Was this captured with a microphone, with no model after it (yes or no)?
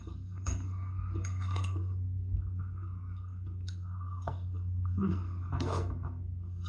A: no